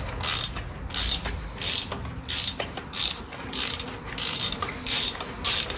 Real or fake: real